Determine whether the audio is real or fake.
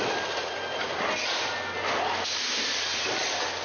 real